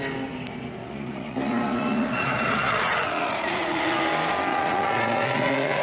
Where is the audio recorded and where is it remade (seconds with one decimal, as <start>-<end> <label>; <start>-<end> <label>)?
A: 0.0-0.8 recorded; 0.8-4.0 remade; 4.0-4.5 recorded; 4.5-5.8 remade